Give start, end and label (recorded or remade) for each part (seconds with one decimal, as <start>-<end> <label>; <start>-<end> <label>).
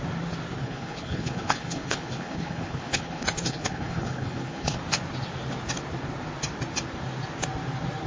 0.0-0.6 recorded; 0.6-4.8 remade; 4.8-8.1 recorded